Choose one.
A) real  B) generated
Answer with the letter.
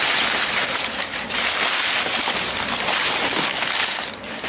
A